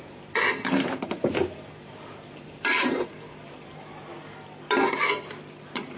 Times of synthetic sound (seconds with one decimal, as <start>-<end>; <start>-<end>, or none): 0.0-4.1; 5.6-6.0